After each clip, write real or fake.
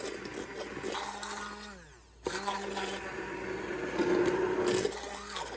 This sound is real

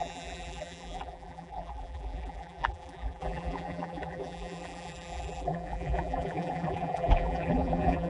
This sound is fake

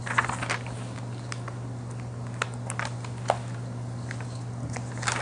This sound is real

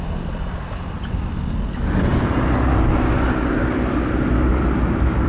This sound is real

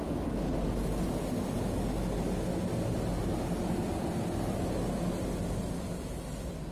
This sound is real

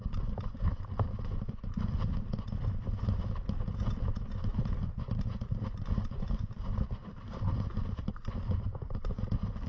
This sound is real